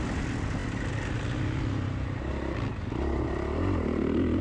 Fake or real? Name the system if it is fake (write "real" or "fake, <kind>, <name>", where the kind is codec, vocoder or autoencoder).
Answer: real